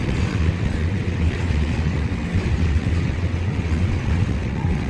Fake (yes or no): yes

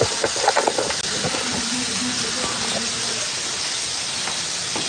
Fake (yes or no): no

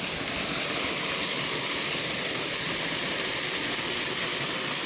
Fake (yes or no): no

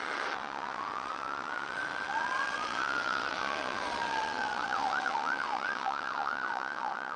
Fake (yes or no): yes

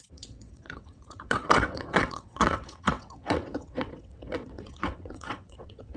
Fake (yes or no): yes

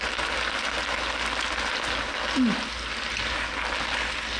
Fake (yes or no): no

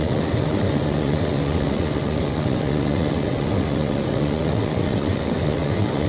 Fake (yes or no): yes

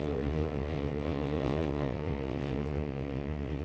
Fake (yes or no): yes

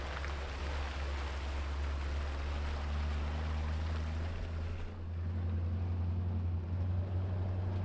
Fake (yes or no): no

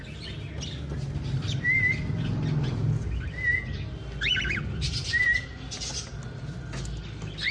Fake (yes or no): no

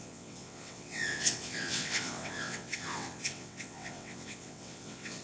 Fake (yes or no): yes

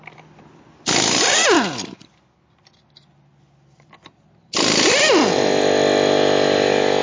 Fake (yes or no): no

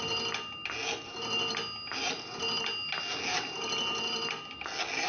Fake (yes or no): no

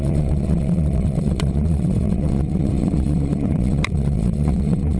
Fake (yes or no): yes